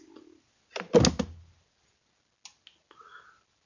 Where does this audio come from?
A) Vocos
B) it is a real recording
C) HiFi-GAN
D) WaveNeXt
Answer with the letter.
B